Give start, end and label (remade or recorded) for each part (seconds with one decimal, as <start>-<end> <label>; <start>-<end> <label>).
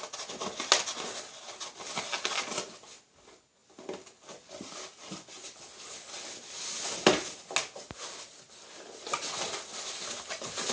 0.0-10.7 recorded